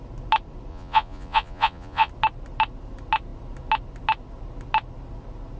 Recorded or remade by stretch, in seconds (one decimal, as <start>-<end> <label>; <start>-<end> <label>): 0.0-0.7 recorded; 0.7-2.1 remade; 2.1-5.6 recorded